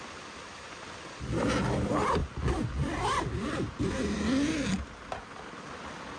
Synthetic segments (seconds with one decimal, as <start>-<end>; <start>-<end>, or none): none